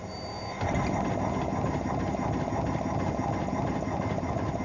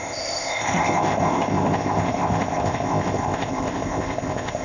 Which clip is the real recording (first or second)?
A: first